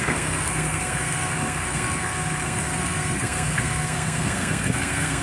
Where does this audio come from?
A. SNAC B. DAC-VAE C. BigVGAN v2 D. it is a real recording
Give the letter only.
A